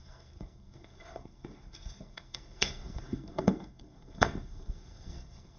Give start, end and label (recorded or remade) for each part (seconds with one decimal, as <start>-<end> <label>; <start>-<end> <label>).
0.0-5.6 remade